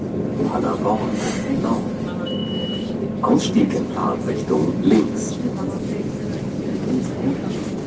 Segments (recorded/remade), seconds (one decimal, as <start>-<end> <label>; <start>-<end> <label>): 0.0-4.0 recorded; 4.0-5.3 remade; 5.3-7.9 recorded